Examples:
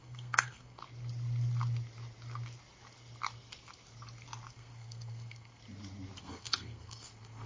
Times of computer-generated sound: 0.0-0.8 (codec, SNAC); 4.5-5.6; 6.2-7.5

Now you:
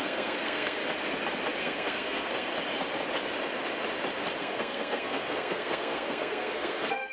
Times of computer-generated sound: 0.0-0.8 (codec, SNAC); 1.6-2.5; 4.4-7.1

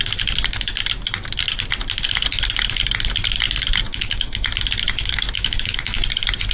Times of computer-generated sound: 3.9-4.5 (autoencoder, DAC-VAE); 5.0-6.0

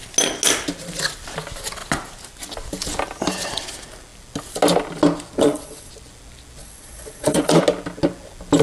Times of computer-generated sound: 5.4-5.9 (vocoder, Vocos); 6.6-7.6

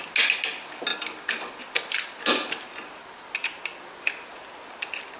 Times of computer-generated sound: none

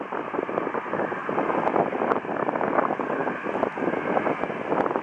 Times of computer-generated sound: none

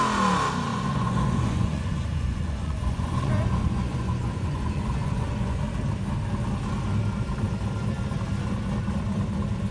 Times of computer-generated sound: 0.7-5.6 (vocoder, Vocos)